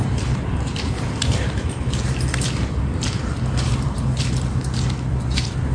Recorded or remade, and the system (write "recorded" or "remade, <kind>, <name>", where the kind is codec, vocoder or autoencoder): remade, vocoder, BigVGAN v2